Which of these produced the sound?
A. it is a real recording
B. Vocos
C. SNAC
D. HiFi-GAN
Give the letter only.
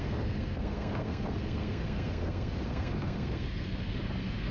C